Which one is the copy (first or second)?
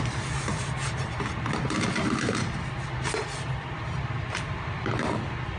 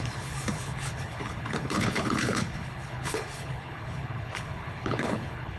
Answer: second